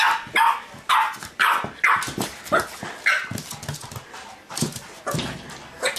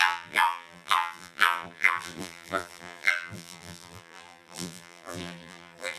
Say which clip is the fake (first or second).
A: second